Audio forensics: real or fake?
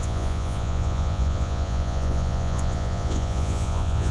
fake